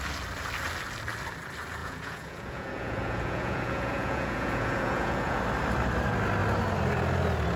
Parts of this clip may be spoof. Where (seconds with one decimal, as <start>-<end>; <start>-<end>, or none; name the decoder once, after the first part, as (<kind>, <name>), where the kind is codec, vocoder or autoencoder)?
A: 1.8-5.4 (vocoder, Vocos)